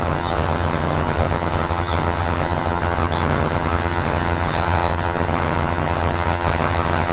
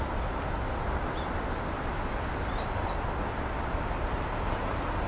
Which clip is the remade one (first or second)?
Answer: first